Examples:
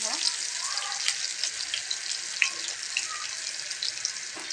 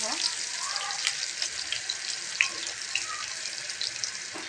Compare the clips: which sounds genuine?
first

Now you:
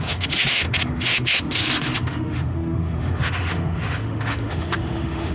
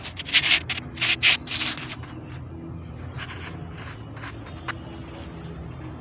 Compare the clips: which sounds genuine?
second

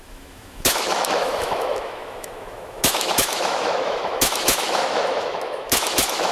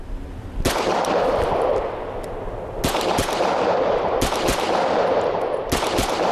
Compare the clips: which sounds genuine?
second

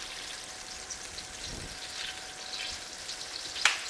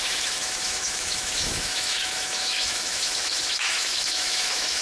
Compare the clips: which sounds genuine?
first